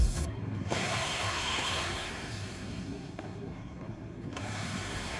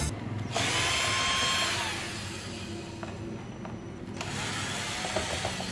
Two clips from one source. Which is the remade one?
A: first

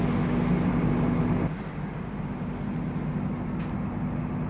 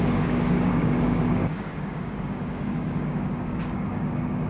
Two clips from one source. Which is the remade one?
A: second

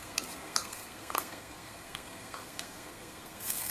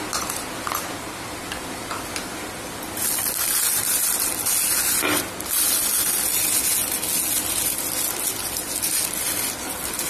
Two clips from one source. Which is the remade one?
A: first